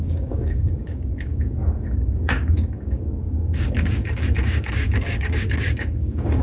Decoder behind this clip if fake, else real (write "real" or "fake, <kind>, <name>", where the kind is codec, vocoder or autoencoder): fake, codec, DAC